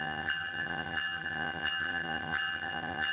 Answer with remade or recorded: remade